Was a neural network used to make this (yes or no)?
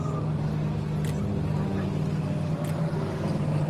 no